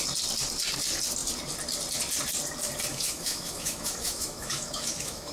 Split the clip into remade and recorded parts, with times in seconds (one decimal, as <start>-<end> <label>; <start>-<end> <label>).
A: 0.0-2.9 recorded; 2.9-5.3 remade